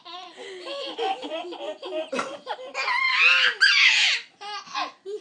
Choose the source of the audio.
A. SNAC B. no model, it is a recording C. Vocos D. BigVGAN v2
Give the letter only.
B